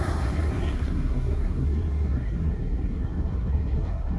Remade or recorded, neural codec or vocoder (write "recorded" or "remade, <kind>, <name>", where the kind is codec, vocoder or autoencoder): remade, codec, SNAC